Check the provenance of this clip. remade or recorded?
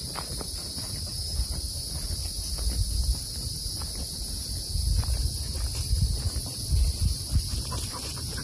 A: recorded